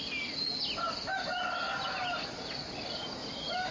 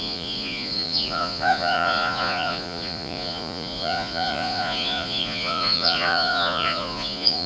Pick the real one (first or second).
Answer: first